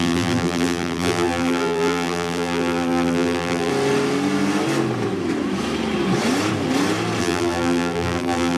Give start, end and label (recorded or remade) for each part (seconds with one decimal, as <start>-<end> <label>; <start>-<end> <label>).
0.0-3.7 remade; 3.7-7.2 recorded; 7.2-8.6 remade